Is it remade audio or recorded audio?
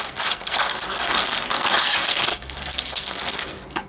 remade